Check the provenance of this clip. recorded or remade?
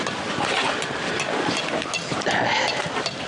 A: recorded